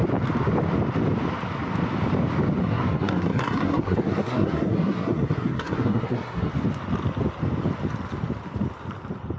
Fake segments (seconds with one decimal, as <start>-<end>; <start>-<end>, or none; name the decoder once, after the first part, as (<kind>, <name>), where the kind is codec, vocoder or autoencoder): 2.6-6.5 (codec, SNAC)